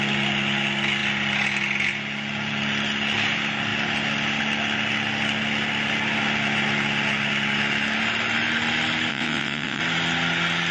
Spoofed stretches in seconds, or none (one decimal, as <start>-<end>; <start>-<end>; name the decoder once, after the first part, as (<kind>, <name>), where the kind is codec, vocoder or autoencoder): 9.1-9.8 (vocoder, WaveNeXt)